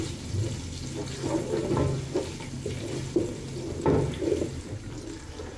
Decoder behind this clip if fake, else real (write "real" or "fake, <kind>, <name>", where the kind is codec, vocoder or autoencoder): real